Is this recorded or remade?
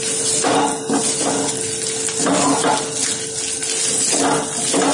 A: recorded